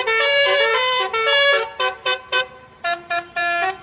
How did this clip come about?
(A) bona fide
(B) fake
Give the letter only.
B